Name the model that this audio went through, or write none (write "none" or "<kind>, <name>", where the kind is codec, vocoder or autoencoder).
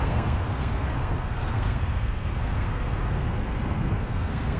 codec, SNAC